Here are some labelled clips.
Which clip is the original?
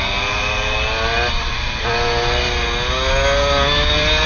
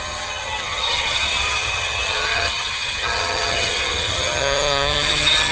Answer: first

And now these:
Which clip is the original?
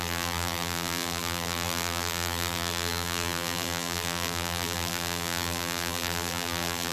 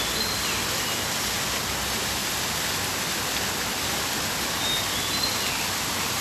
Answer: second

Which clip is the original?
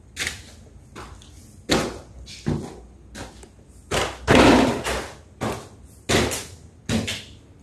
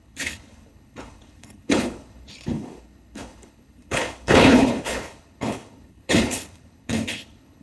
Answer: first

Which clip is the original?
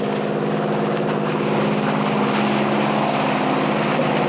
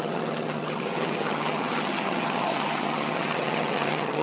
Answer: first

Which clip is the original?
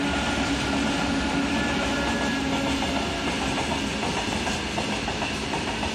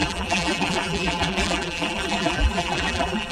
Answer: first